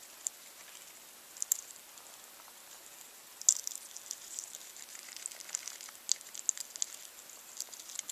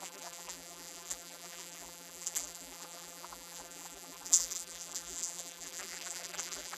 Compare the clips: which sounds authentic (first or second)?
first